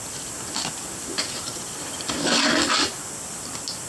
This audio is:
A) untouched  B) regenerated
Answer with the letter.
A